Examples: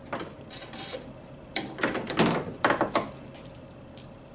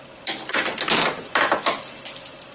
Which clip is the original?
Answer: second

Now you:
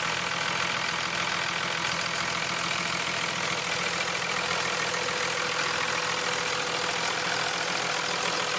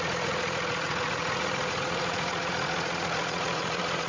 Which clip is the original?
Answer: first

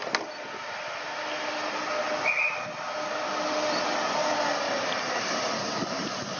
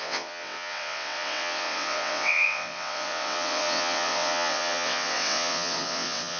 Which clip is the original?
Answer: first